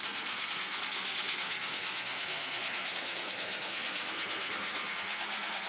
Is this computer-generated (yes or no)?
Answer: yes